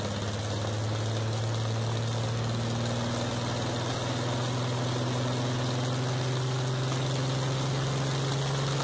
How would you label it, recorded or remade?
recorded